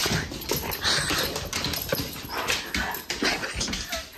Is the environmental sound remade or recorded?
recorded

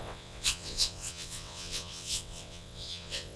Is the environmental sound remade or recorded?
remade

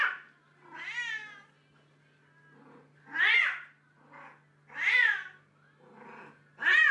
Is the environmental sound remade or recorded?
recorded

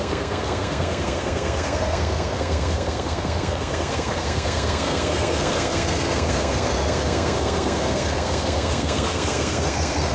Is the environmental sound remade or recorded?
remade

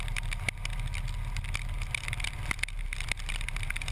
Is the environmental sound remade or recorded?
recorded